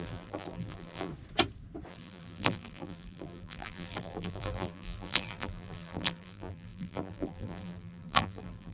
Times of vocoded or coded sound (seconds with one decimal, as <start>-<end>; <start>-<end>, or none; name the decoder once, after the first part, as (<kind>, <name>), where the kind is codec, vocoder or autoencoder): 0.0-1.1 (vocoder, BigVGAN v2); 1.9-8.7